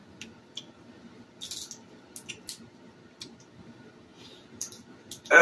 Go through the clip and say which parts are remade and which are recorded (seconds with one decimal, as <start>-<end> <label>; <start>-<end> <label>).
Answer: 0.0-4.1 recorded; 4.1-4.7 remade; 4.7-5.4 recorded